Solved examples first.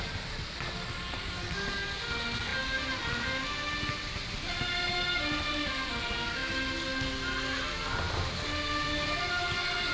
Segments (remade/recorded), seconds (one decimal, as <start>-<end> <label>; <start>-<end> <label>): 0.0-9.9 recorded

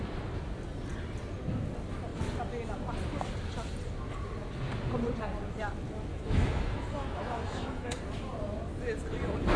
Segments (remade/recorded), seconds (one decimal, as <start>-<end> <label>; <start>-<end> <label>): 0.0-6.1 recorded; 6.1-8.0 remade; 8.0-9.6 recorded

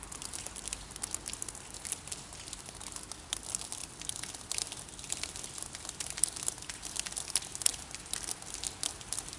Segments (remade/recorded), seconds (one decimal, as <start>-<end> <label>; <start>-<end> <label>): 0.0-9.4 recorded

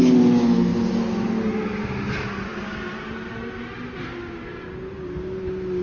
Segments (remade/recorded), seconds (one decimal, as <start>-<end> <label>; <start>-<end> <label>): 0.0-5.8 recorded

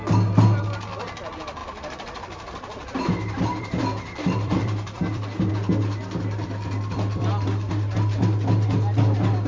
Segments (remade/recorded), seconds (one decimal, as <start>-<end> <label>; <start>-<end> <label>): 0.0-1.6 recorded; 1.6-5.5 remade; 5.5-9.5 recorded

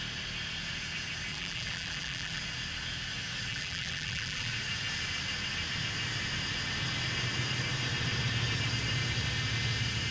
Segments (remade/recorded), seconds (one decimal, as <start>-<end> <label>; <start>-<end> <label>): 0.0-1.3 recorded; 1.3-2.4 remade; 2.4-3.5 recorded; 3.5-4.5 remade; 4.5-10.1 recorded

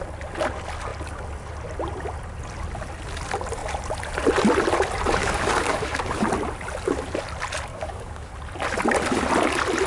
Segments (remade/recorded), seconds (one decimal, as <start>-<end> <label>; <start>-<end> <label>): 0.0-5.2 recorded; 5.2-6.3 remade; 6.3-7.7 recorded; 7.7-8.3 remade; 8.3-9.9 recorded

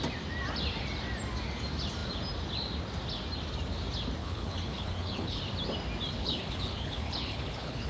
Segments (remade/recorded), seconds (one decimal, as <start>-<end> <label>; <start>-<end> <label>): 0.0-4.2 recorded; 4.2-5.4 remade; 5.4-6.2 recorded; 6.2-7.9 remade